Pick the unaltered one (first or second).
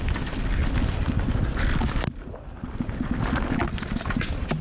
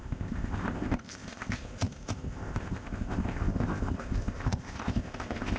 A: first